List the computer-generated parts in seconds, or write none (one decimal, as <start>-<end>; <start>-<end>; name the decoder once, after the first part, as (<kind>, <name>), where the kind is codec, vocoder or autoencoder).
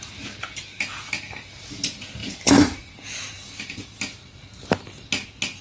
2.2-4.0 (vocoder, BigVGAN v2)